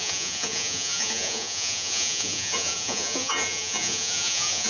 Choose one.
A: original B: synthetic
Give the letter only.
B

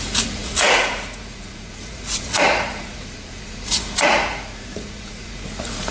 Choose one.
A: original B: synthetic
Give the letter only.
B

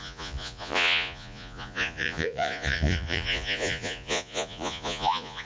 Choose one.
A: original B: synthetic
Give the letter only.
B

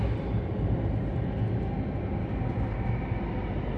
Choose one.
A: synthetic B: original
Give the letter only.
B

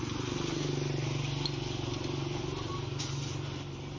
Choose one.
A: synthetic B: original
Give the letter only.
B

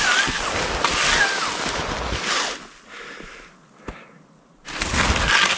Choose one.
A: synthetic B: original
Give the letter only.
B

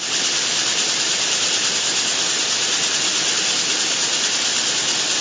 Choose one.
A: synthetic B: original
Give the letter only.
B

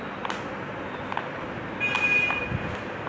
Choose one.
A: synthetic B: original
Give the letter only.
B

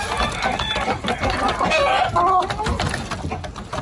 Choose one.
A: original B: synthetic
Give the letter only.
A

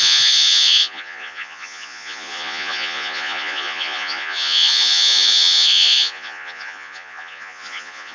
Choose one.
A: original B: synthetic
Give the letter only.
B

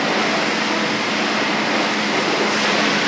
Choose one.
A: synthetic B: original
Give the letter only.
B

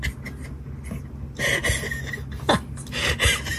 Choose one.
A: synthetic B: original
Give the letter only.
B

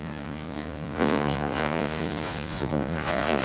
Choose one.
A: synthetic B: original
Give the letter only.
A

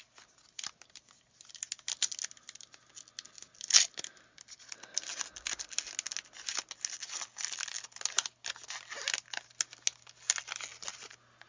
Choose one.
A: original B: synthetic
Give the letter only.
A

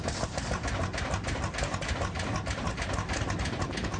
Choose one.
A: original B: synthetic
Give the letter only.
A